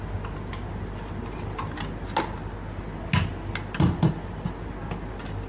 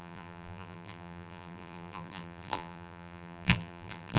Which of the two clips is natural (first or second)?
first